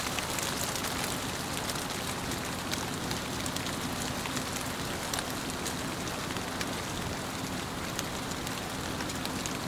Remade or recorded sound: recorded